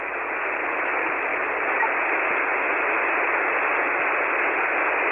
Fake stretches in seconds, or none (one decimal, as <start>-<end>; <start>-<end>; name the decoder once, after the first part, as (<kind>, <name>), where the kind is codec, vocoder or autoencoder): none

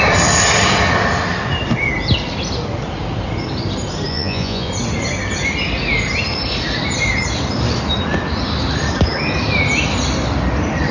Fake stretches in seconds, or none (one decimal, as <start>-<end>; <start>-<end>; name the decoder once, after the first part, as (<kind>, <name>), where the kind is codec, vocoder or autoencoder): 4.1-4.7 (vocoder, Vocos)

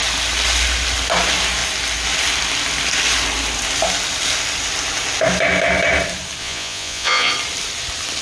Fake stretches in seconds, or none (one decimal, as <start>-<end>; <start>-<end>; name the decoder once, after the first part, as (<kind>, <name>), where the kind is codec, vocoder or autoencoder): 6.4-7.3 (vocoder, Vocos)

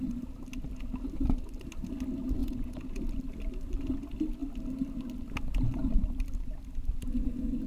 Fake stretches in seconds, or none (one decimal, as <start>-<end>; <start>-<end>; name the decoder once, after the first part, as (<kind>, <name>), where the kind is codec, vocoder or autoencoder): 2.4-3.0 (vocoder, Vocos)

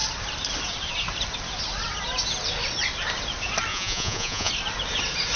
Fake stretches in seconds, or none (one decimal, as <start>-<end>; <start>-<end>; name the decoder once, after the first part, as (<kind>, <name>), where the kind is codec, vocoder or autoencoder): 3.7-4.5 (vocoder, Vocos)